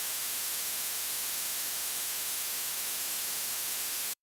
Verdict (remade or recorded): remade